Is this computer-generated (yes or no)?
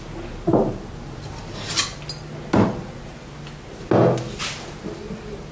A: no